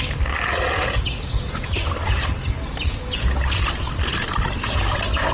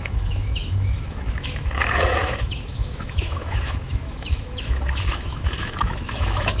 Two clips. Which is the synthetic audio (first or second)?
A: second